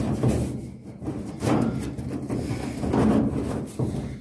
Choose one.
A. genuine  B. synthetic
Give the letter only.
A